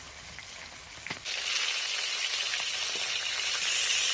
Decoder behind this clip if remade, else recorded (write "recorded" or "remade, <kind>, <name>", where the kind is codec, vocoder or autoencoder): recorded